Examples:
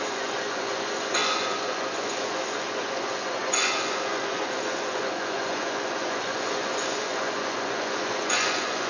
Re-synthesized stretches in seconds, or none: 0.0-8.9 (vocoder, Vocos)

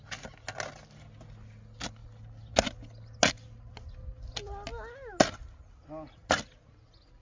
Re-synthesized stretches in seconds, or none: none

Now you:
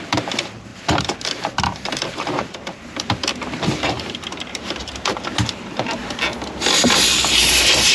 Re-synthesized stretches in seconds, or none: 0.0-3.3 (vocoder, BigVGAN v2); 4.5-6.0; 7.4-7.9

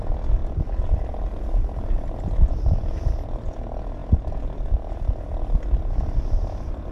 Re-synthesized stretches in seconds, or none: none

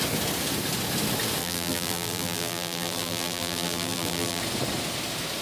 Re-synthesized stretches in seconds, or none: 1.4-4.4 (vocoder, BigVGAN v2)

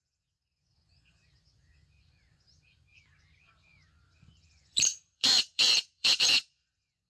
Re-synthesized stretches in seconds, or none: 0.0-7.1 (vocoder, Vocos)